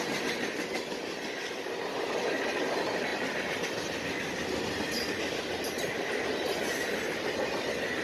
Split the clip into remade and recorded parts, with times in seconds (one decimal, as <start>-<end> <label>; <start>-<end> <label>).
0.0-8.0 recorded